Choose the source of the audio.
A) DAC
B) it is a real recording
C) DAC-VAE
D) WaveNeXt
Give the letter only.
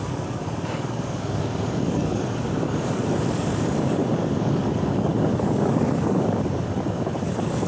A